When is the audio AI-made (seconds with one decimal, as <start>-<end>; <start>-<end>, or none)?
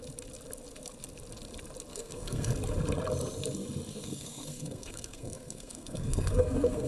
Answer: 1.9-2.5; 3.9-6.9